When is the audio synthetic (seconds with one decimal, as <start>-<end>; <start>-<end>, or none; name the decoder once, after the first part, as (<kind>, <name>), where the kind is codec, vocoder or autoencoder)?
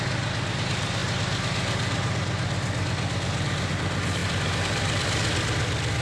4.2-6.0 (vocoder, BigVGAN v2)